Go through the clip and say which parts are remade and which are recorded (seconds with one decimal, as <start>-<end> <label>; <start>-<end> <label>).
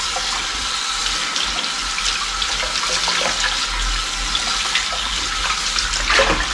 0.0-6.5 recorded